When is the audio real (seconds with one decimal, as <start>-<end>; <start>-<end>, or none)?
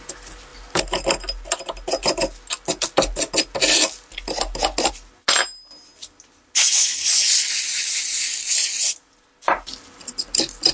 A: 0.0-10.7